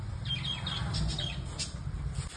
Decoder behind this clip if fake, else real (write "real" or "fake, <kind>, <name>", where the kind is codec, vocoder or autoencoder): real